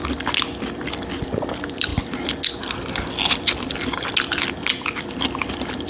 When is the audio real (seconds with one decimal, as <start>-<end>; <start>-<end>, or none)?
0.0-5.9